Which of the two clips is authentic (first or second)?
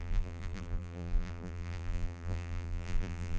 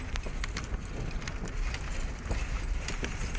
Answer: second